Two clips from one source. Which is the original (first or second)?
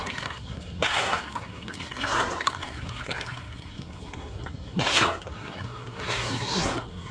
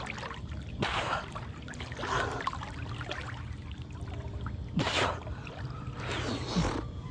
second